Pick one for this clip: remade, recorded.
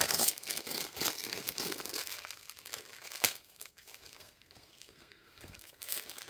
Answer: remade